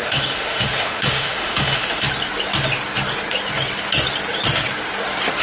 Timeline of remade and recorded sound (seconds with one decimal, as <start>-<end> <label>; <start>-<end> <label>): 0.0-2.0 remade; 2.0-5.4 recorded